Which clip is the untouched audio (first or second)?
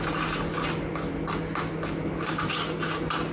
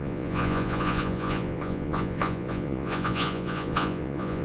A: first